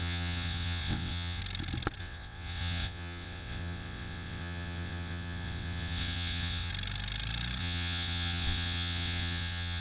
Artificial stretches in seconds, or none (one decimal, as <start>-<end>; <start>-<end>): 0.0-1.4; 2.0-6.7; 7.6-9.8